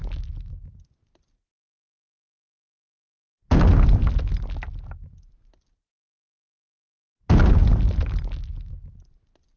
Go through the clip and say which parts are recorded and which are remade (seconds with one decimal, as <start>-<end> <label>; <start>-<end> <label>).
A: 0.0-9.6 recorded